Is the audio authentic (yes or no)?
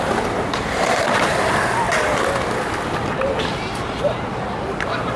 no